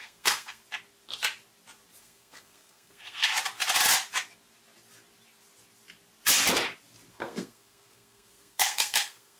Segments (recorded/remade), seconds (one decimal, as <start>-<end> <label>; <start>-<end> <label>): 0.0-0.6 remade; 0.6-2.0 recorded; 2.0-3.3 remade; 3.3-7.1 recorded; 7.1-9.4 remade